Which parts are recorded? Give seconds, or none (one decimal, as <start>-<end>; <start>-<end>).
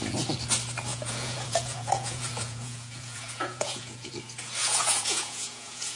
0.0-0.9; 4.1-4.6